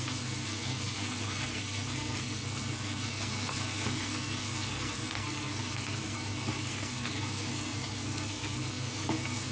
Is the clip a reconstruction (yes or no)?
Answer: yes